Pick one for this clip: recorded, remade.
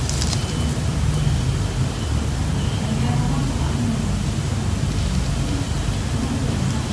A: recorded